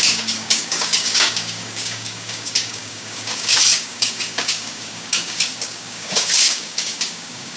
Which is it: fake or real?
fake